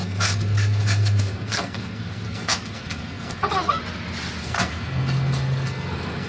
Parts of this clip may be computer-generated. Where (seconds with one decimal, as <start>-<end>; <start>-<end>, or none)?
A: 0.0-3.8; 4.4-6.3